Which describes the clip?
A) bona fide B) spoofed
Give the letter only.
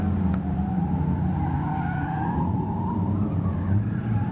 B